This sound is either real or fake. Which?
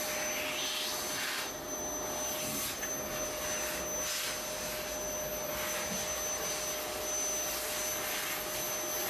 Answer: real